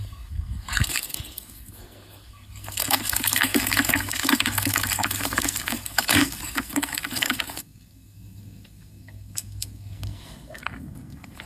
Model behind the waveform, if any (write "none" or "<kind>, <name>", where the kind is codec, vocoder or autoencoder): codec, SNAC